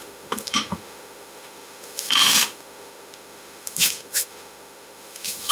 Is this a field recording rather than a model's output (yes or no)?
no